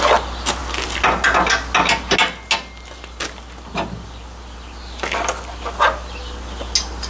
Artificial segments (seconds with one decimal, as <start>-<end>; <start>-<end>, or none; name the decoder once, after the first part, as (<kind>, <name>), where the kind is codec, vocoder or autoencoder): none